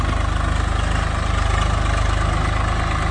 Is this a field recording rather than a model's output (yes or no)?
yes